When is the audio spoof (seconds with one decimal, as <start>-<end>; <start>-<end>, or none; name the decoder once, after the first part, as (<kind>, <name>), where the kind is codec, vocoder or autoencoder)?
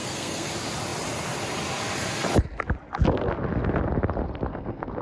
0.0-0.5 (codec, SNAC); 4.5-5.0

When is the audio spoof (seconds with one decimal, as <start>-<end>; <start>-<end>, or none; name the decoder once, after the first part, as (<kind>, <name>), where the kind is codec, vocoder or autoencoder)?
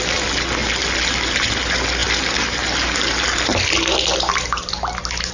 none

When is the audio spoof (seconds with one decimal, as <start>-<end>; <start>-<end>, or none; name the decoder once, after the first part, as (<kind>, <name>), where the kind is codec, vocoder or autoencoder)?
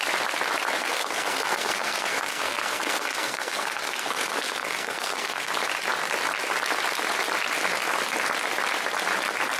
0.8-5.5 (codec, SNAC)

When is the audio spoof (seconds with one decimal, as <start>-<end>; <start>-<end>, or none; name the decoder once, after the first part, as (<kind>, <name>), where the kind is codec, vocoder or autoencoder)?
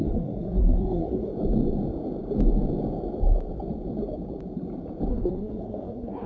0.0-1.3 (codec, SNAC); 5.1-6.3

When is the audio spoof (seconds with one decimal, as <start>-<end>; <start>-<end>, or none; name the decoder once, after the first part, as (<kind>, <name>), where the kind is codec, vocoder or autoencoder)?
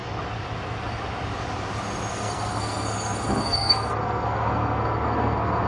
2.1-5.7 (codec, SNAC)